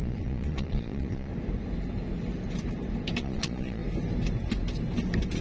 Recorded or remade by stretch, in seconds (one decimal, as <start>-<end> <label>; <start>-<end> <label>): 0.0-1.3 remade; 1.3-3.2 recorded; 3.2-3.8 remade; 3.8-5.4 recorded